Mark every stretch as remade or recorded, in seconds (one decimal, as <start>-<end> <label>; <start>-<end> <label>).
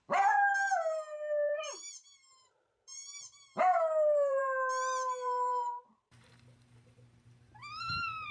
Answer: 0.0-8.3 remade